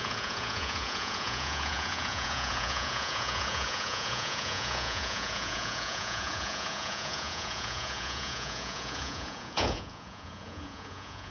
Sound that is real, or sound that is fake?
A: fake